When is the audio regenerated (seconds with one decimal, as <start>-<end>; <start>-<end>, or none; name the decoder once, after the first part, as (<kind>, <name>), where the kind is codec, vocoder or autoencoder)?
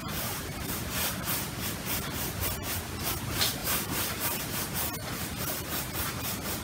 0.0-0.8 (vocoder, BigVGAN v2); 3.6-4.6